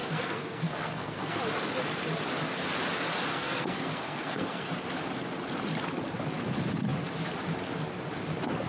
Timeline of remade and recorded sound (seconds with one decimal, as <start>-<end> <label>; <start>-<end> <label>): 0.0-1.4 remade; 1.4-3.3 recorded; 3.3-4.7 remade; 4.7-8.7 recorded